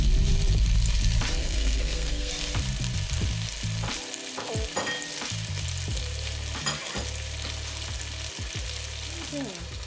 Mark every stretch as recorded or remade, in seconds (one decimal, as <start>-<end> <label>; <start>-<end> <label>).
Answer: 0.0-1.4 recorded; 1.4-2.3 remade; 2.3-9.9 recorded